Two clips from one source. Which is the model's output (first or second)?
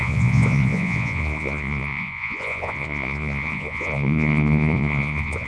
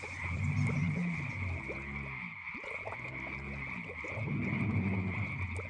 first